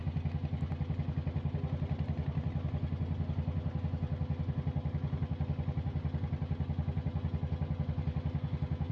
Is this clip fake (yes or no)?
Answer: no